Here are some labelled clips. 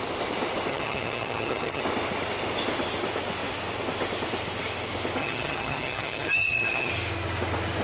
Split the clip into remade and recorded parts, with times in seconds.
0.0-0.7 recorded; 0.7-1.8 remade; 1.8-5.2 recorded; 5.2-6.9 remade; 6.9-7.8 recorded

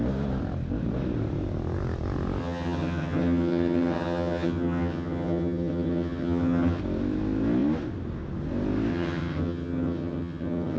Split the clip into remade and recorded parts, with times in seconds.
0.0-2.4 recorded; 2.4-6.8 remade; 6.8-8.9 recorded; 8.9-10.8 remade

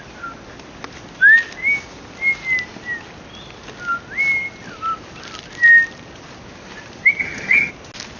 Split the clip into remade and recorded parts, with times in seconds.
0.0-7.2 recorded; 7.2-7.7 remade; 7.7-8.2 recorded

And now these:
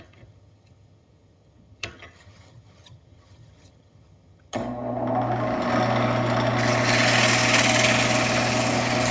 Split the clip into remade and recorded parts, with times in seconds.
0.0-4.6 remade; 4.6-9.1 recorded